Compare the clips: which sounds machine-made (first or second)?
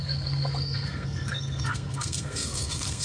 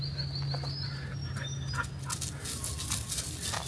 first